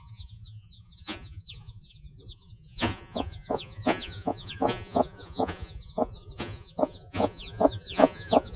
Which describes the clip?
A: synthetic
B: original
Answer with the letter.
A